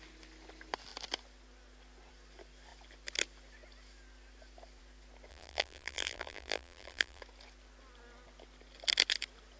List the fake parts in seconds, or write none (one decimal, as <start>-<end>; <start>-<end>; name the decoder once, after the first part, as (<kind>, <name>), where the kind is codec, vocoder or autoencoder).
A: 5.3-7.2 (vocoder, BigVGAN v2)

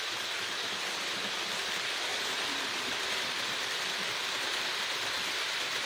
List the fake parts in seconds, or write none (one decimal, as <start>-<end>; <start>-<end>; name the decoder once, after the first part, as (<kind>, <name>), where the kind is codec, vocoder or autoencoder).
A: 2.1-5.9 (vocoder, BigVGAN v2)